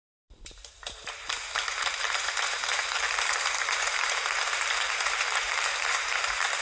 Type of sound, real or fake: fake